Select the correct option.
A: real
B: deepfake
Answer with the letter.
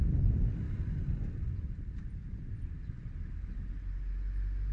A